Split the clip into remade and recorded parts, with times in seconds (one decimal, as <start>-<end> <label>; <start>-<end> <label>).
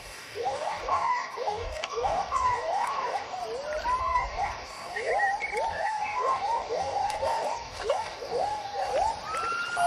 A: 0.0-3.4 remade; 3.4-4.0 recorded; 4.0-5.1 remade; 5.1-5.7 recorded; 5.7-8.9 remade; 8.9-9.9 recorded